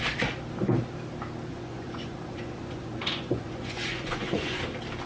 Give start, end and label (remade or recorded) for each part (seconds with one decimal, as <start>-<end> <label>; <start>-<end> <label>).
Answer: 0.0-1.5 recorded; 1.5-4.6 remade; 4.6-5.1 recorded